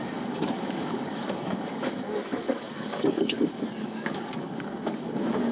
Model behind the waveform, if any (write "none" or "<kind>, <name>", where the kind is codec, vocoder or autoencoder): codec, DAC